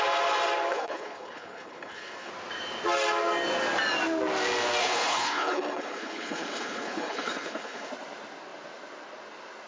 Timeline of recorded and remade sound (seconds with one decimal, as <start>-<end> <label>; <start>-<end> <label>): 0.0-0.7 recorded; 0.7-2.3 remade; 2.3-4.8 recorded; 4.8-7.9 remade; 7.9-9.7 recorded